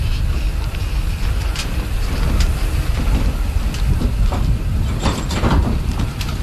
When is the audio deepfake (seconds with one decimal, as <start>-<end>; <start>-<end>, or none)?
5.0-5.9